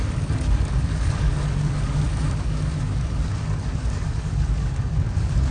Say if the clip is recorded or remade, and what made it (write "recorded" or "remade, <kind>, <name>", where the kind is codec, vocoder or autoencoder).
remade, codec, DAC